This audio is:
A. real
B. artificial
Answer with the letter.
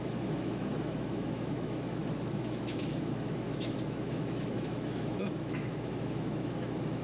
B